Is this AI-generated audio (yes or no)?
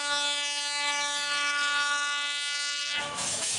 yes